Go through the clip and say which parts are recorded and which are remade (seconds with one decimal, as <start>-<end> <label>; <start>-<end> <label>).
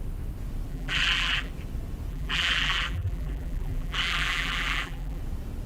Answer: 0.0-0.7 recorded; 0.7-1.5 remade; 1.5-2.1 recorded; 2.1-5.2 remade; 5.2-5.7 recorded